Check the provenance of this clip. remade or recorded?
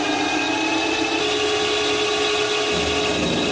recorded